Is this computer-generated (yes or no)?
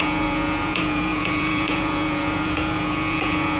yes